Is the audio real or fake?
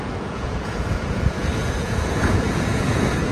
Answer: fake